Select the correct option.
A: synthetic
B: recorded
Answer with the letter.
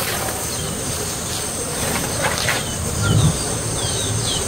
B